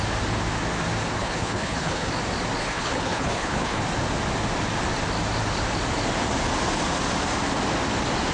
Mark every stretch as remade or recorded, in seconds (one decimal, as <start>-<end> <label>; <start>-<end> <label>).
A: 0.0-1.2 recorded; 1.2-2.1 remade; 2.1-2.6 recorded; 2.6-3.8 remade; 3.8-8.3 recorded